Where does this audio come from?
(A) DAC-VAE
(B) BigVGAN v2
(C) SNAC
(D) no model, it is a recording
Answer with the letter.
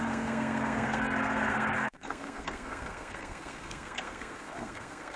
C